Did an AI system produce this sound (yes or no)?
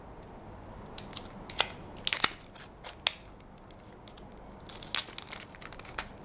no